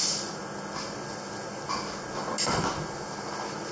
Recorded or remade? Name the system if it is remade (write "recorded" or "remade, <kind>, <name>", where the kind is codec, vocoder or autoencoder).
recorded